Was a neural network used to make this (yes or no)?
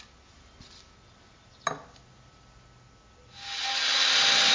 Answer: no